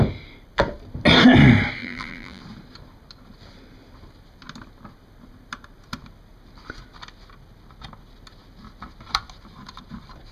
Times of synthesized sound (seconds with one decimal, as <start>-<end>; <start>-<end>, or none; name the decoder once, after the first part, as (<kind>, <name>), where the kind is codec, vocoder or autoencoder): 1.8-2.4 (vocoder, BigVGAN v2)